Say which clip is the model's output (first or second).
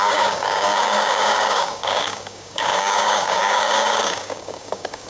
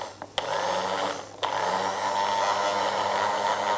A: first